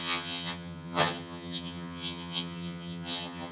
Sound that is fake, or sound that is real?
fake